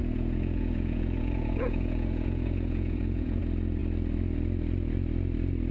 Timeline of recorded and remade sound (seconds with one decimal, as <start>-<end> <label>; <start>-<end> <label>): 0.0-3.4 remade; 3.4-5.7 recorded